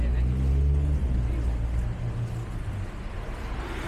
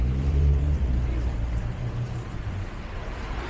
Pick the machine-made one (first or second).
second